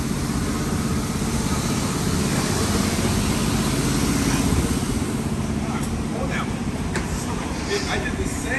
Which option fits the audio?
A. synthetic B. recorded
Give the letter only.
B